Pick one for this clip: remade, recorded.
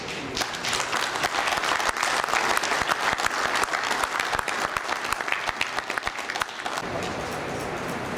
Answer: recorded